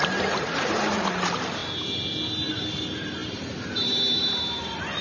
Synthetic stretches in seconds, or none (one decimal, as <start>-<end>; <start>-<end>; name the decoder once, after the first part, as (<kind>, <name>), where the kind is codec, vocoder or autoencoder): 0.0-1.6 (vocoder, BigVGAN v2); 2.5-5.0